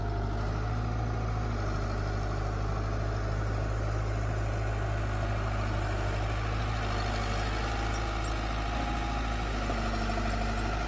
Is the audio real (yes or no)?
yes